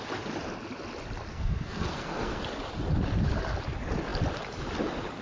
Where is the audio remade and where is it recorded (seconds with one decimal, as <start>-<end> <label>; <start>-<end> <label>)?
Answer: 0.0-1.3 recorded; 1.3-2.4 remade; 2.4-5.2 recorded